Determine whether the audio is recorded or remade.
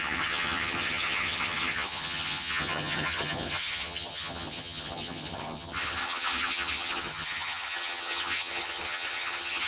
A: remade